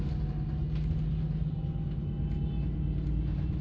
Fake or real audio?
real